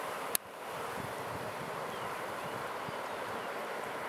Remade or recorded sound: recorded